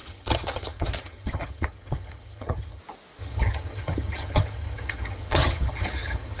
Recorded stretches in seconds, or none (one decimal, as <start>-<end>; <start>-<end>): 2.8-3.2